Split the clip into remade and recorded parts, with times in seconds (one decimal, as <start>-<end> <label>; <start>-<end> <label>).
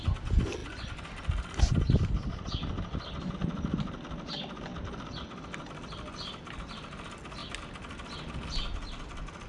0.0-4.7 recorded; 4.7-5.2 remade; 5.2-9.5 recorded